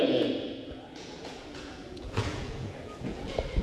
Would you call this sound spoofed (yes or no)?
yes